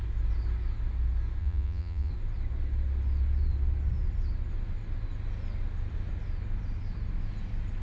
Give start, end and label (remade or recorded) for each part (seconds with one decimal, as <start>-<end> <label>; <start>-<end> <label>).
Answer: 0.0-1.4 recorded; 1.4-2.1 remade; 2.1-7.8 recorded